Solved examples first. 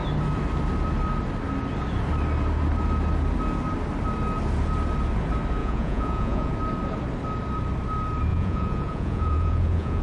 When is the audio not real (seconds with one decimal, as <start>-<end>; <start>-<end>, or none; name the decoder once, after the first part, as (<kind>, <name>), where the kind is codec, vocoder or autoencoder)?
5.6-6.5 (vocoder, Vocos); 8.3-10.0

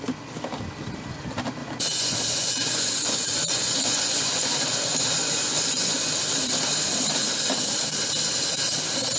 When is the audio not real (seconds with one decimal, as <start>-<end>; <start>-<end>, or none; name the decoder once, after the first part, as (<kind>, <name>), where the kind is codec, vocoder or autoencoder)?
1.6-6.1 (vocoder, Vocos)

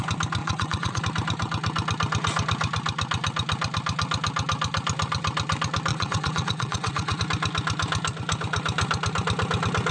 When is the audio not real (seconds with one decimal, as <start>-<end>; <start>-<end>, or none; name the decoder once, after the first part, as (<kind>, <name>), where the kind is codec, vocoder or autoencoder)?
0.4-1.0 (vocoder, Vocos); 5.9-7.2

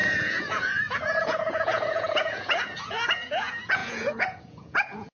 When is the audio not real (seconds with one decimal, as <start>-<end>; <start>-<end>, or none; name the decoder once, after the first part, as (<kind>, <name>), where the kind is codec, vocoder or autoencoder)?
0.0-5.1 (vocoder, Vocos)